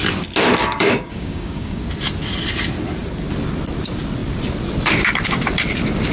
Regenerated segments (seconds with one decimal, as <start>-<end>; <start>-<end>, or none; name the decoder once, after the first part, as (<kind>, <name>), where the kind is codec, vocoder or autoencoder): 0.6-1.8 (codec, DAC)